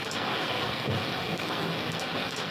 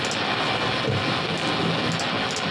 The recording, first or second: second